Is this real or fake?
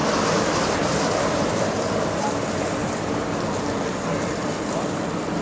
fake